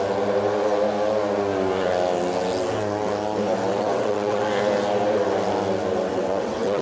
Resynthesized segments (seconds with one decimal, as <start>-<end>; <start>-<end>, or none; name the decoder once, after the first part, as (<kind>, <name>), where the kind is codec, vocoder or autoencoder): 3.7-4.5 (vocoder, WaveNeXt); 6.1-6.8